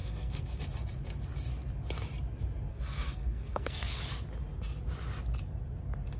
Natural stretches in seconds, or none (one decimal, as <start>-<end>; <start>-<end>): 0.6-2.7; 4.0-6.2

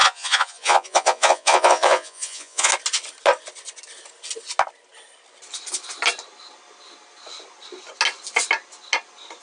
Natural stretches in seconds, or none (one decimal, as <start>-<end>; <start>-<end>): 2.7-9.4

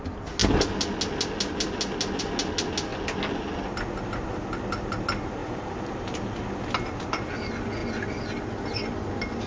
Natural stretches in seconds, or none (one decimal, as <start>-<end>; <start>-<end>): 0.0-5.4; 6.3-9.5

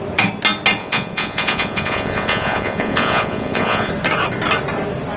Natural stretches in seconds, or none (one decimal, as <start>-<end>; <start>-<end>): 0.0-0.8; 3.9-5.2

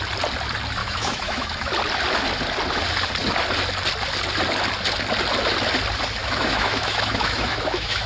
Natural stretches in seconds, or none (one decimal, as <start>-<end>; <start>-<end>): 0.0-0.8; 1.7-6.2

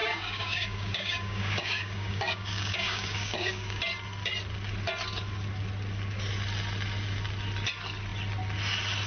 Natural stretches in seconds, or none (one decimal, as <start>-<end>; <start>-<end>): 3.8-9.1